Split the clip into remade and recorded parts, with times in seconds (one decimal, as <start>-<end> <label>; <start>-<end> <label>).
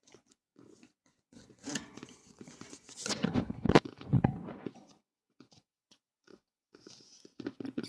0.0-7.9 remade